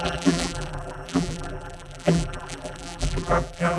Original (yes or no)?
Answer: no